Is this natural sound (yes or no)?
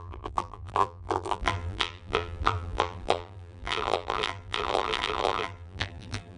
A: no